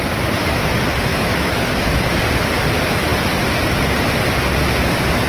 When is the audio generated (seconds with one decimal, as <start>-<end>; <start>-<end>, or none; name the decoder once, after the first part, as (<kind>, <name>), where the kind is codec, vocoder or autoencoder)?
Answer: 1.1-2.2 (autoencoder, DAC-VAE)

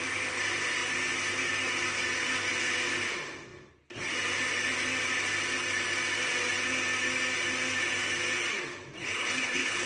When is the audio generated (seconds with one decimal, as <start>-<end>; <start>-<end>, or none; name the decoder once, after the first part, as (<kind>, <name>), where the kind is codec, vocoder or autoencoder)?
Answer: 9.0-9.9 (codec, HILCodec)

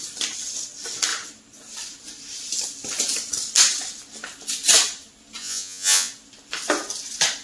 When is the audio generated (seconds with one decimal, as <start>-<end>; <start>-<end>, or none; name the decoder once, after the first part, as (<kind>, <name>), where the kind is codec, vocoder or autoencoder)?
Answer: 5.4-6.1 (vocoder, Vocos)

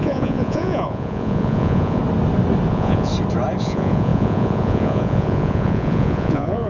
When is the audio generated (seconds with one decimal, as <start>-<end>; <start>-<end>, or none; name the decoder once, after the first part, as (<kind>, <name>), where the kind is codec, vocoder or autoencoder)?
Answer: 0.0-2.0 (vocoder, Vocos); 2.7-3.1; 3.6-6.7